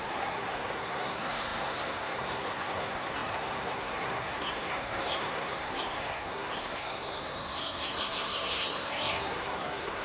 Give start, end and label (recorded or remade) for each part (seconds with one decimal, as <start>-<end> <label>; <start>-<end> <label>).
0.0-10.0 remade